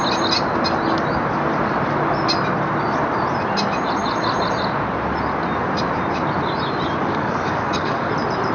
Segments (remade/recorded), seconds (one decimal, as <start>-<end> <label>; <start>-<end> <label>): 0.0-7.0 recorded; 7.0-8.1 remade; 8.1-8.5 recorded